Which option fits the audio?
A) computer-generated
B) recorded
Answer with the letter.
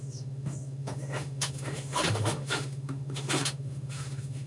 A